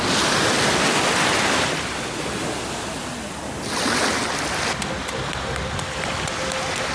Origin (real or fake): real